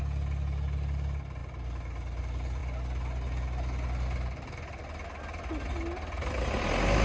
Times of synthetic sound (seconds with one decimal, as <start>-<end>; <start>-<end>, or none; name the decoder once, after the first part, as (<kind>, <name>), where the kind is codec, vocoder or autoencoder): none